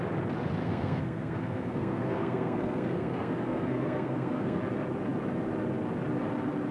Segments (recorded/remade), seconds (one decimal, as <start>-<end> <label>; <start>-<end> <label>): 0.0-0.6 recorded; 0.6-4.6 remade; 4.6-6.7 recorded